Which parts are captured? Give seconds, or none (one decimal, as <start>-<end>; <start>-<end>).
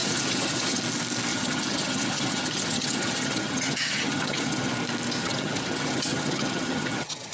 0.8-1.3; 4.7-5.2